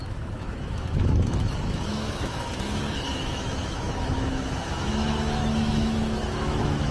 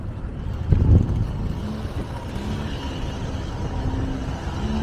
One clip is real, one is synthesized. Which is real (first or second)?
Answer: second